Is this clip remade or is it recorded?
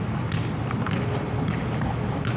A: recorded